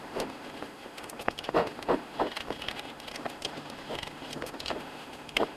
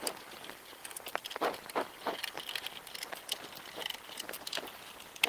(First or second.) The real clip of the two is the second